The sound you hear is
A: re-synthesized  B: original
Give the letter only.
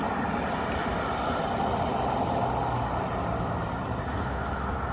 B